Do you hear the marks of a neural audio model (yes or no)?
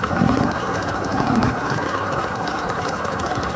yes